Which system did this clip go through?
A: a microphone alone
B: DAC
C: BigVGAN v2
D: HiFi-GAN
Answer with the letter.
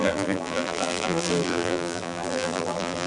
C